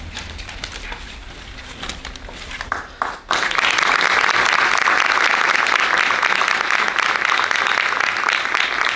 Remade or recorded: recorded